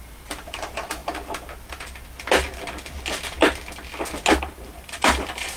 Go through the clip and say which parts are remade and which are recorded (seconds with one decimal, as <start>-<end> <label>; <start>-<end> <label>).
0.0-1.0 remade; 1.0-4.4 recorded; 4.4-5.6 remade

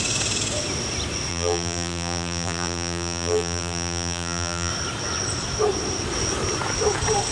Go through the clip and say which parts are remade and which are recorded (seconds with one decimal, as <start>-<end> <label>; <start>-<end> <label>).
0.0-1.3 recorded; 1.3-4.7 remade; 4.7-7.3 recorded